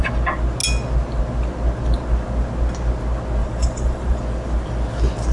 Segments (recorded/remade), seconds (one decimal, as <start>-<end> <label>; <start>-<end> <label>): 0.0-3.4 recorded; 3.4-4.2 remade; 4.2-5.3 recorded